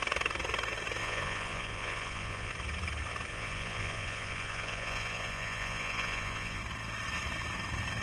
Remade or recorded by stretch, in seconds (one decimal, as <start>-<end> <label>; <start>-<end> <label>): 0.0-1.0 recorded; 1.0-2.5 remade; 2.5-3.3 recorded; 3.3-6.6 remade; 6.6-8.0 recorded